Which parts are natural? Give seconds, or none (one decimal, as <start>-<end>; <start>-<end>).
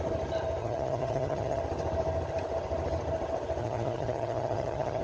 0.0-0.6; 1.6-3.6